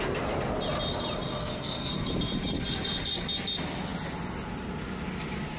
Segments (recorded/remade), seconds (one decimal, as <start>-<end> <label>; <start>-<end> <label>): 0.0-1.4 recorded; 1.4-1.9 remade; 1.9-5.6 recorded